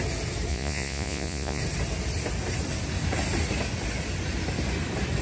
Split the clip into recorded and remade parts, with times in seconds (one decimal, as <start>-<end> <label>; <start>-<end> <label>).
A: 0.0-0.5 recorded; 0.5-1.6 remade; 1.6-5.2 recorded